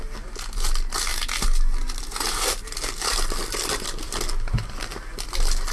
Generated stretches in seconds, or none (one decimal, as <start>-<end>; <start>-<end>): none